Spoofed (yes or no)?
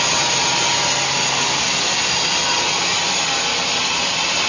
no